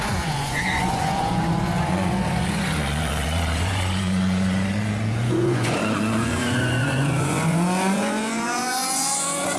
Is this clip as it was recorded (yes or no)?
no